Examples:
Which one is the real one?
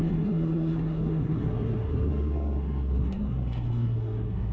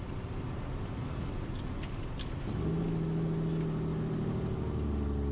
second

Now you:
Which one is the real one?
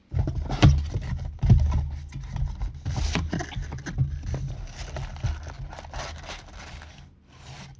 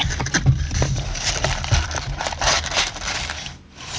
first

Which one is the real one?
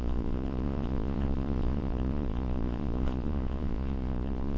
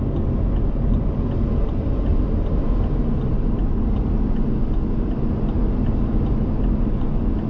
second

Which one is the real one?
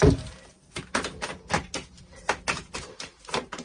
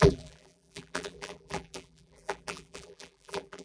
first